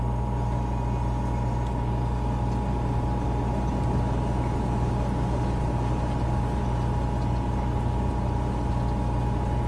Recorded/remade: recorded